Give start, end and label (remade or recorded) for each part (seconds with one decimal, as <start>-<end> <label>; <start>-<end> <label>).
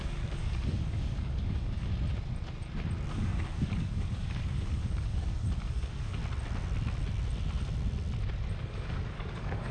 0.0-1.9 remade; 1.9-3.1 recorded; 3.1-6.2 remade; 6.2-8.6 recorded; 8.6-9.7 remade